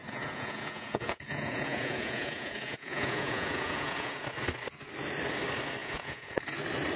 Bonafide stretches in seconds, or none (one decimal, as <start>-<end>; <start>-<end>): 4.2-5.8; 6.4-7.0